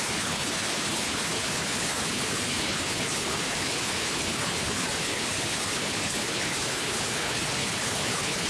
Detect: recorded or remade remade